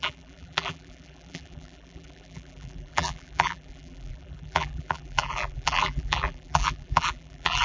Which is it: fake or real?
fake